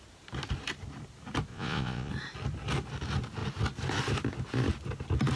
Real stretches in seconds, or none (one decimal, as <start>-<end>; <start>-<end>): 0.0-1.5; 2.1-5.4